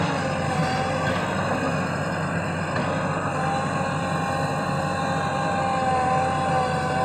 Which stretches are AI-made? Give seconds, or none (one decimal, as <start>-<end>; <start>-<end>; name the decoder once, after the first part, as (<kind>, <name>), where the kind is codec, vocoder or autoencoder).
0.0-0.6 (vocoder, BigVGAN v2); 4.8-7.0